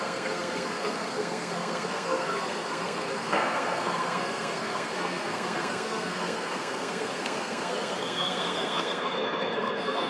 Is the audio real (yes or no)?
no